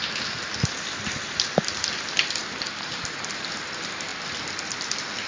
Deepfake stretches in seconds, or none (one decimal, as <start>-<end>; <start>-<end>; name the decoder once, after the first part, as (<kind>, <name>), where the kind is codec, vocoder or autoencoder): none